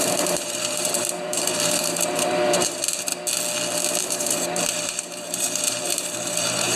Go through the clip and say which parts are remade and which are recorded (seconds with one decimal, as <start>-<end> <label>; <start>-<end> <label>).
0.0-3.1 remade; 3.1-4.0 recorded; 4.0-6.8 remade